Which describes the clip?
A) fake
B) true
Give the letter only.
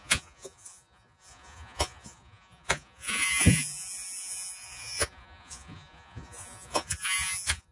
A